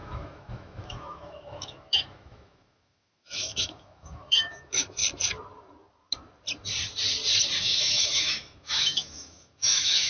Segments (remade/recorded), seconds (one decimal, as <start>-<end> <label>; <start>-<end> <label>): 0.0-5.0 remade; 5.0-7.6 recorded; 7.6-10.1 remade